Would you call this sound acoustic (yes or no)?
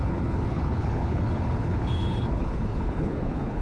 no